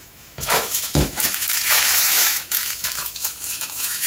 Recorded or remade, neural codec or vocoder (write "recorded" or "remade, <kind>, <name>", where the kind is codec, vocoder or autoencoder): remade, autoencoder, DAC-VAE